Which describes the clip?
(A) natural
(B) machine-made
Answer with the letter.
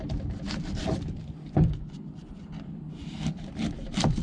A